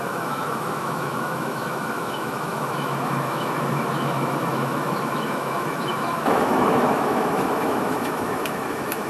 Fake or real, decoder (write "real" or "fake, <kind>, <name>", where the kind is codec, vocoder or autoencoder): fake, autoencoder, DAC-VAE